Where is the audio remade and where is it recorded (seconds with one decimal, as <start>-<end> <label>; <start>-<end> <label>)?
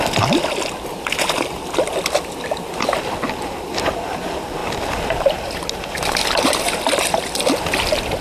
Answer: 0.0-8.2 recorded